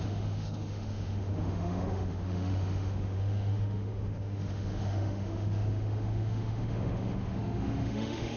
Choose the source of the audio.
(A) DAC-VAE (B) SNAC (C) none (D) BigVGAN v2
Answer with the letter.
A